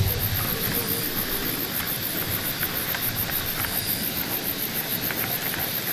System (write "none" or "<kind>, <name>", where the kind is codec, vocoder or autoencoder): none